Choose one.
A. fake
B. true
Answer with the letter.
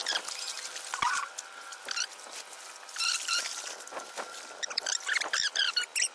B